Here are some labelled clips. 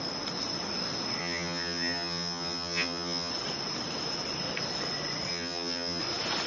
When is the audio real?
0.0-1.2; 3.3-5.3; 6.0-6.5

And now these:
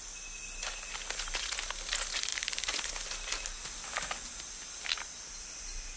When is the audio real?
0.0-6.0

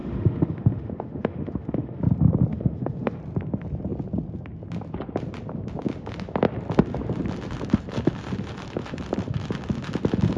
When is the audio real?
2.0-2.5; 3.2-10.4

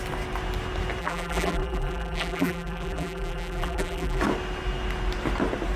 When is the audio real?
0.0-1.0; 4.2-5.8

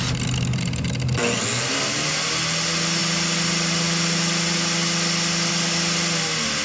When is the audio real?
0.0-6.6